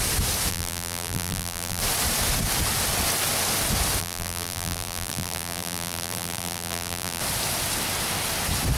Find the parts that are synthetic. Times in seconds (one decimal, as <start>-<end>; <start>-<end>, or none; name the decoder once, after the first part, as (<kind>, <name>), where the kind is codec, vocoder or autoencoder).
0.5-1.8 (vocoder, BigVGAN v2); 4.0-7.2